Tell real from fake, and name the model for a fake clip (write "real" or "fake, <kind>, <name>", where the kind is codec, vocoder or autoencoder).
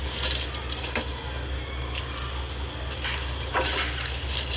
real